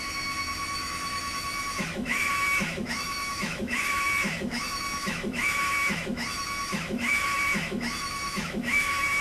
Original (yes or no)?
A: no